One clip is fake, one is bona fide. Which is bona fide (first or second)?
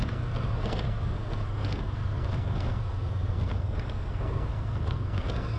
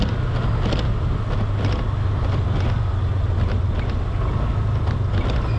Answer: second